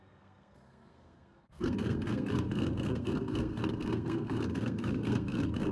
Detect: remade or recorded remade